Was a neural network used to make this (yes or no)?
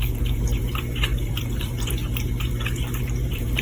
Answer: yes